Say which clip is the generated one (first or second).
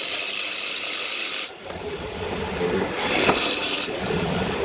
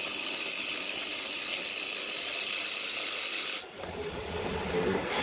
first